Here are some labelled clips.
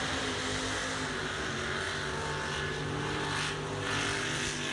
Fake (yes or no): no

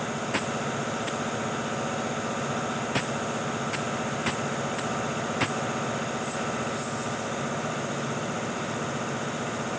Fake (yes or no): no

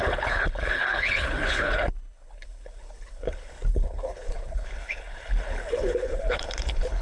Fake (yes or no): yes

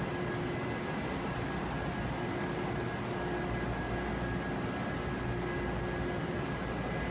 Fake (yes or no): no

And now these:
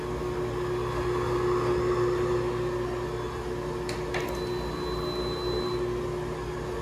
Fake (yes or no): no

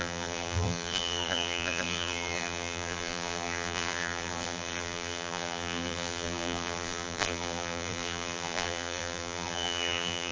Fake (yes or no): yes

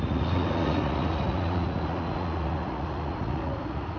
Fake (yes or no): yes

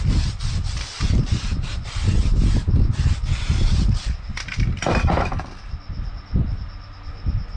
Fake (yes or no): no